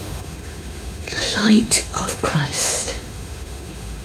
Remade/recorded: remade